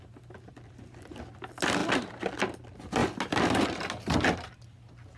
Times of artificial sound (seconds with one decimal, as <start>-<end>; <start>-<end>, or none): none